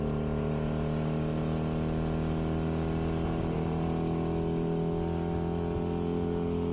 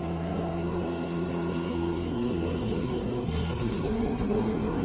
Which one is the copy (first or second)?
second